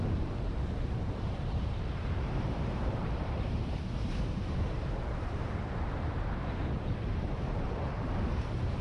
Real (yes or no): no